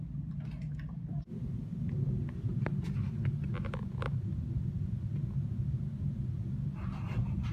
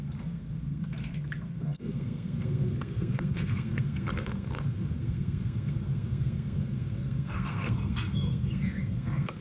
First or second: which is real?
first